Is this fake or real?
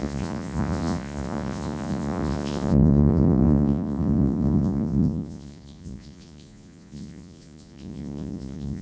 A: fake